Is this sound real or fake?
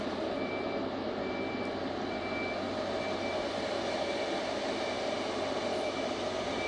real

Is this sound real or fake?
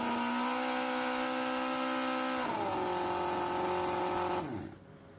real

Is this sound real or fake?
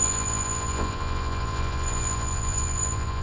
fake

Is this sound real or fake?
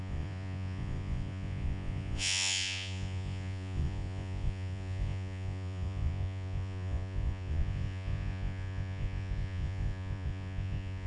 fake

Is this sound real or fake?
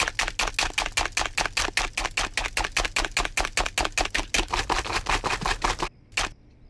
real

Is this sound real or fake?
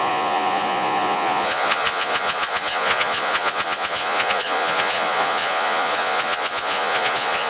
fake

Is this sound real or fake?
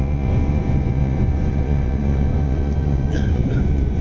fake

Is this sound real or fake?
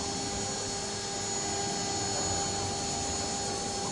real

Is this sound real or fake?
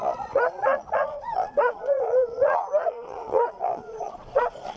fake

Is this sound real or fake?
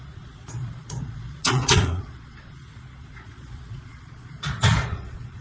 fake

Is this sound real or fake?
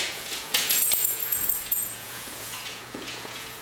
fake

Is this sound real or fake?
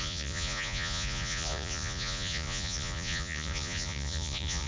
fake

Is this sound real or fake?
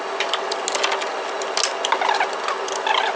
real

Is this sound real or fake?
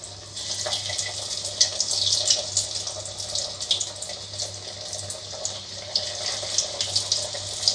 real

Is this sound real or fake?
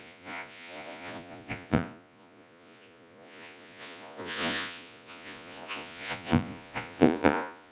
fake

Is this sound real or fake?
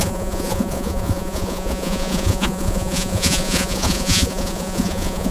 fake